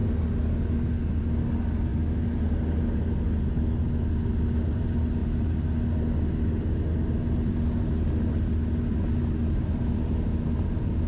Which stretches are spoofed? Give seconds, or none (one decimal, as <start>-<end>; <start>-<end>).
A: none